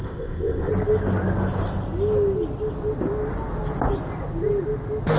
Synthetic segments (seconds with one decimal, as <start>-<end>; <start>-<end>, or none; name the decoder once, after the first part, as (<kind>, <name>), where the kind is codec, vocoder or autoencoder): 0.0-0.7 (codec, ZipCodec)

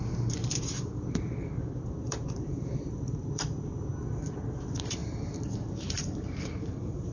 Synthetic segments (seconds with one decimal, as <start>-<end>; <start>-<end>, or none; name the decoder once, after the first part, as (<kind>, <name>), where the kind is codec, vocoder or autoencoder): 0.0-3.9 (vocoder, BigVGAN v2); 4.5-5.0; 5.7-7.1

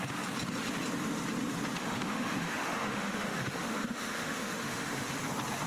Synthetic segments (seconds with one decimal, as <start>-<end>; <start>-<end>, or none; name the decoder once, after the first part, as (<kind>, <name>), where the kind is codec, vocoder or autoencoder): 1.8-5.2 (autoencoder, DAC-VAE)